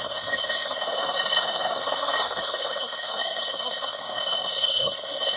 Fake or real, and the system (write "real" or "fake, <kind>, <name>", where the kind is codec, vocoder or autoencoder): fake, codec, SNAC